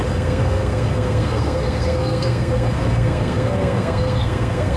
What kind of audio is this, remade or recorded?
remade